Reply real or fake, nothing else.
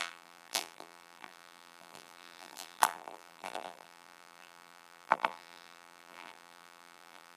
fake